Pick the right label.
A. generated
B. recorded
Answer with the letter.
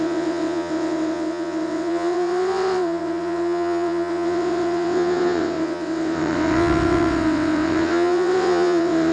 A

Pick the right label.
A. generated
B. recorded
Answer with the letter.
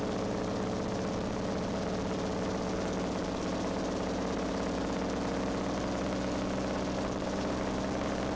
B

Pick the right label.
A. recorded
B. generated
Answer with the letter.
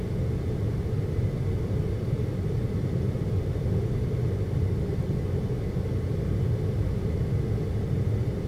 A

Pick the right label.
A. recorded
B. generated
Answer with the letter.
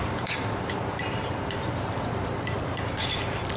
B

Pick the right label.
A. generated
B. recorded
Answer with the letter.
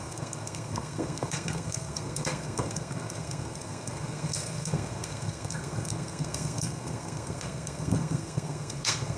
A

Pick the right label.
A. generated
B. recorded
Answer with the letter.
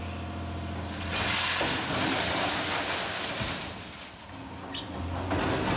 B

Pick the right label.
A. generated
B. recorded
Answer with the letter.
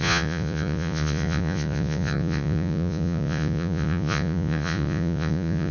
A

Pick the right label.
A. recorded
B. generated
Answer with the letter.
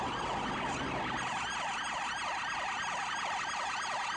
A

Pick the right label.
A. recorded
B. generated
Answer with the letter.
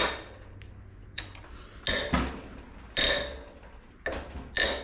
A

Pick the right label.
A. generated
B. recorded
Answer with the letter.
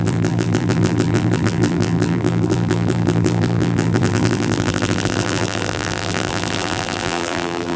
A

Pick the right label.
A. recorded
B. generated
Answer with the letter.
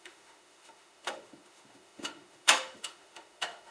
B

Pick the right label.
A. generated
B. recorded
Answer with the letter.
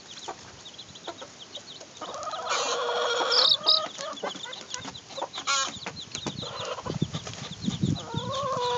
B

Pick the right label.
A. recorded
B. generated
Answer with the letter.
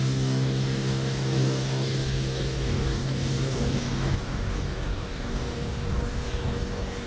B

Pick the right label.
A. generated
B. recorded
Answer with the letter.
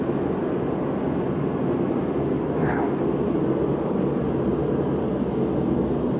B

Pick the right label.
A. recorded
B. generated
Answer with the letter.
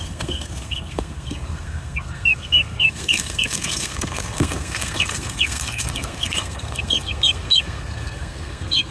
B